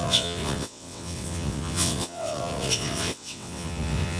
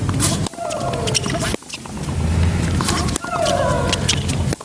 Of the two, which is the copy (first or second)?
first